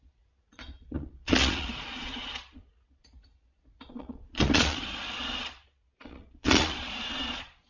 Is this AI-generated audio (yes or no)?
yes